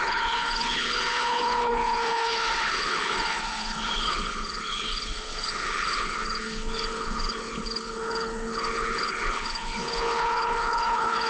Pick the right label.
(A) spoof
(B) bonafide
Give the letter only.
A